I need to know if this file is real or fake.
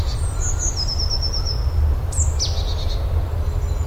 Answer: real